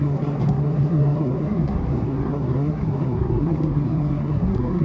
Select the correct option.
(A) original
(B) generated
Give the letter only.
B